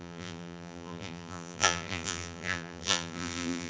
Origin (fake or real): fake